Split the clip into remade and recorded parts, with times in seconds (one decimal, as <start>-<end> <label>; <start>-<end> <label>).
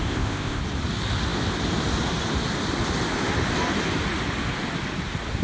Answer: 0.0-0.6 remade; 0.6-5.4 recorded